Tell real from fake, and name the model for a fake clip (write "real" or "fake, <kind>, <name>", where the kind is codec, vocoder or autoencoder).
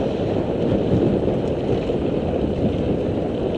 real